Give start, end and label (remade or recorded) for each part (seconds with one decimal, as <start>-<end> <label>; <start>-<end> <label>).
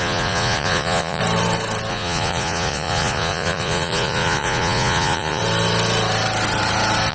0.0-1.2 remade; 1.2-1.9 recorded; 1.9-5.4 remade; 5.4-7.1 recorded